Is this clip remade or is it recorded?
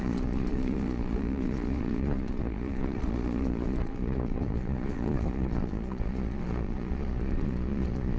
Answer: remade